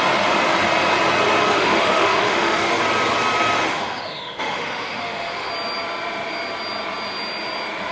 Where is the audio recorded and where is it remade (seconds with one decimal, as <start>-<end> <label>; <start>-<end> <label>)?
0.0-1.4 recorded; 1.4-2.7 remade; 2.7-3.7 recorded; 3.7-5.5 remade; 5.5-7.9 recorded